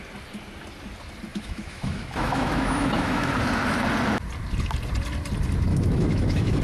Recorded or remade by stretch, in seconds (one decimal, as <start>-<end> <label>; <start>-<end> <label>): 0.0-1.3 recorded; 1.3-3.3 remade; 3.3-5.7 recorded; 5.7-6.6 remade

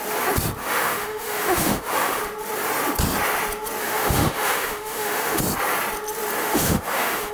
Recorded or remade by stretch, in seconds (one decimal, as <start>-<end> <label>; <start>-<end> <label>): 0.0-0.6 recorded; 0.6-2.2 remade; 2.2-3.8 recorded; 3.8-5.4 remade; 5.4-6.4 recorded; 6.4-7.3 remade

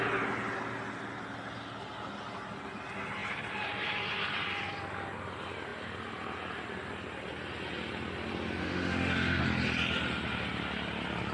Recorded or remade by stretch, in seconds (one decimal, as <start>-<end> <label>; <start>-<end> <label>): 0.0-8.6 recorded; 8.6-9.4 remade; 9.4-11.3 recorded

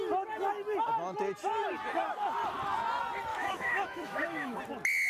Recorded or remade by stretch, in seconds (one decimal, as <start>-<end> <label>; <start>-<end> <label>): 0.0-3.3 recorded; 3.3-4.6 remade; 4.6-5.1 recorded

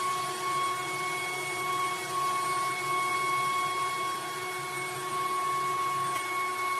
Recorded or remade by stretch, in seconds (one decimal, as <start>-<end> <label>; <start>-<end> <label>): 0.0-6.8 recorded

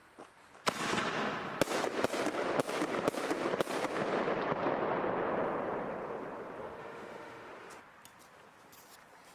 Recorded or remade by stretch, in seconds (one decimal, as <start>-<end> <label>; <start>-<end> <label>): 0.0-6.6 recorded; 6.6-7.5 remade; 7.5-9.3 recorded

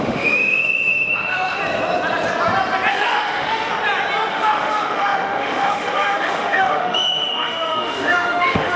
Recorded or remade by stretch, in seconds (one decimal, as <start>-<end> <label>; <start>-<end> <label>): 0.0-1.6 remade; 1.6-2.9 recorded; 2.9-3.7 remade; 3.7-4.3 recorded; 4.3-8.8 remade